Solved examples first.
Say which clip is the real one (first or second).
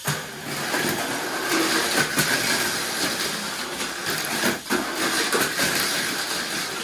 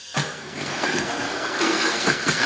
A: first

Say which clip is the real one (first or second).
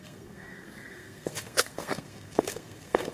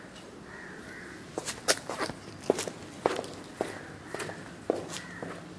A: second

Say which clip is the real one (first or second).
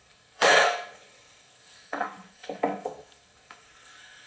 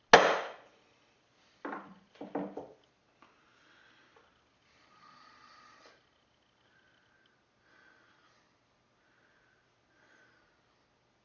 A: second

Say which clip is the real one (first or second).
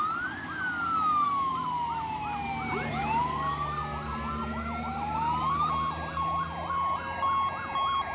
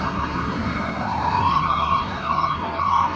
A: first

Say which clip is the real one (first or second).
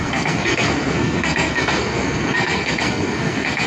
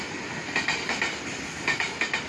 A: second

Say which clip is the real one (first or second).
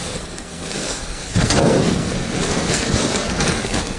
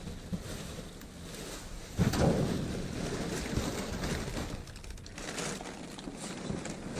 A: second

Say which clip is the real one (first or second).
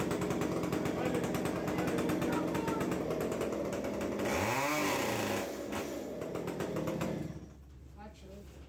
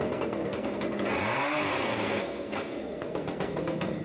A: first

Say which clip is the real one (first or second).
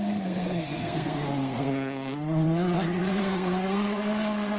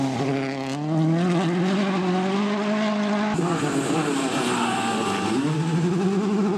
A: second